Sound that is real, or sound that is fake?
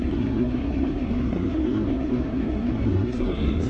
fake